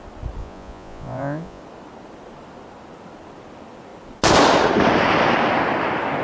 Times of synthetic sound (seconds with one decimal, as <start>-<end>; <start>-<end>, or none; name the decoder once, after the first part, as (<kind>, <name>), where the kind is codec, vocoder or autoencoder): 0.4-1.6 (vocoder, Vocos)